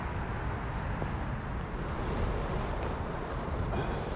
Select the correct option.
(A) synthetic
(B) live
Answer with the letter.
B